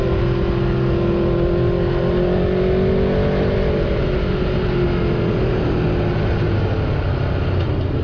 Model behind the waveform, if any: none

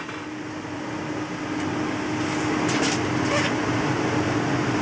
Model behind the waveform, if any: none